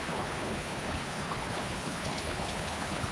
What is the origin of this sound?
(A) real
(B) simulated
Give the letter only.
B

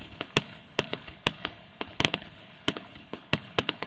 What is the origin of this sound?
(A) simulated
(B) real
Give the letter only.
A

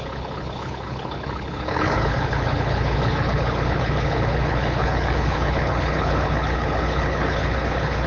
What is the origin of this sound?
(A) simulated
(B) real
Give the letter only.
A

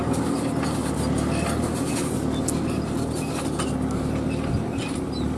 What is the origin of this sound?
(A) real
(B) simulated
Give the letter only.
A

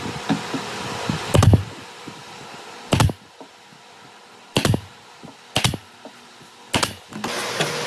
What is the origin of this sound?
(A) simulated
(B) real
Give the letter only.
B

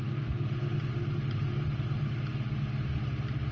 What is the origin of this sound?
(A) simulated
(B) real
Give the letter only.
B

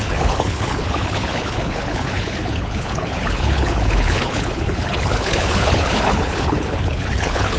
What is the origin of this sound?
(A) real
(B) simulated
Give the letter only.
B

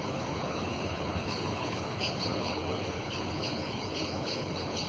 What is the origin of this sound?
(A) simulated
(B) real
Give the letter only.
A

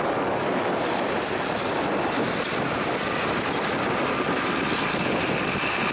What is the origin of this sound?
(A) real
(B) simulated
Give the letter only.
A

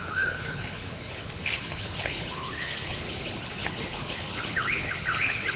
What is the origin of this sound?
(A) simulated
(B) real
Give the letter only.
A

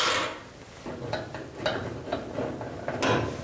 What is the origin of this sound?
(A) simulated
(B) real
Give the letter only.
B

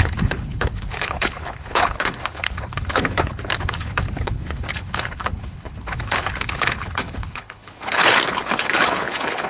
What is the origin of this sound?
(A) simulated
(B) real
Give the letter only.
A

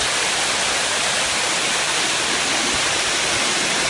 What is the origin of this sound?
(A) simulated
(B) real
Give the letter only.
B